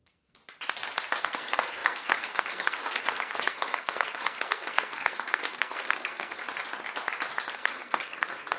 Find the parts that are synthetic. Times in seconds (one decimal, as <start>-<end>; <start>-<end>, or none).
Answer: 0.0-0.4; 1.2-6.4; 7.5-8.6